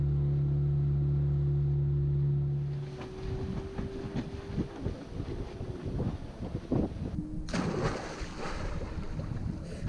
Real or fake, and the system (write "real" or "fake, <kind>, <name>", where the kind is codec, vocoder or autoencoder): real